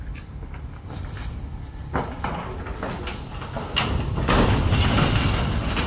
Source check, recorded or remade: recorded